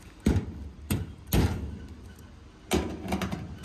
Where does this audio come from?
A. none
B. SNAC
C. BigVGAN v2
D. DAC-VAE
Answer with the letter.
A